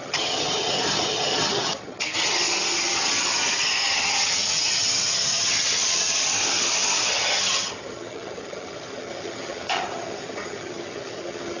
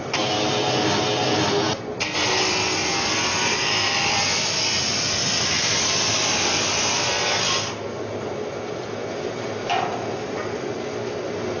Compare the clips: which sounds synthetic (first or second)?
first